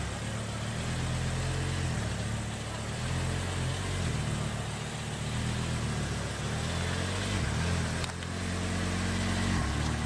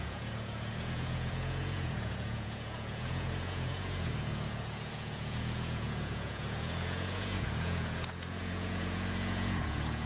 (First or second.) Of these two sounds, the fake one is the second